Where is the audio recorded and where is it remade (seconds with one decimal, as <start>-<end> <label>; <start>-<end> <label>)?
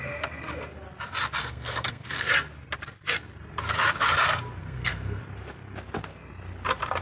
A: 0.0-1.4 recorded; 1.4-2.3 remade; 2.3-4.6 recorded; 4.6-5.2 remade; 5.2-7.0 recorded